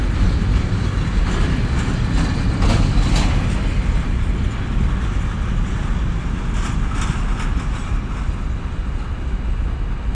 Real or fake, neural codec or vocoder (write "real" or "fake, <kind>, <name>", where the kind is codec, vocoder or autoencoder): real